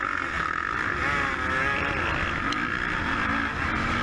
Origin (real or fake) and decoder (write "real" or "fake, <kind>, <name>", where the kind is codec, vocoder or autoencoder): real